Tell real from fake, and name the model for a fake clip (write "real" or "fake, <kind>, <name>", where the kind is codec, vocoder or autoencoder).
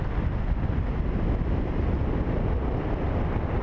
real